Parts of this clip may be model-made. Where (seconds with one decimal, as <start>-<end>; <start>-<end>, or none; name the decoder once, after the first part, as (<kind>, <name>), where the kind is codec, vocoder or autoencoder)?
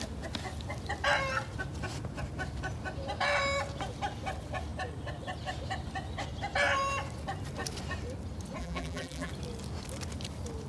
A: 8.6-9.3 (vocoder, BigVGAN v2)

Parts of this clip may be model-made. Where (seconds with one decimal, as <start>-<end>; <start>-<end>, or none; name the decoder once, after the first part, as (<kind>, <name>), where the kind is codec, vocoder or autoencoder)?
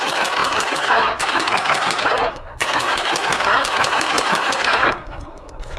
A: 0.0-5.8 (codec, SNAC)